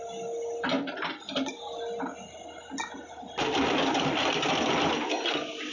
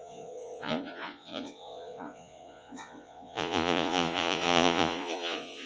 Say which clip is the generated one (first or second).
second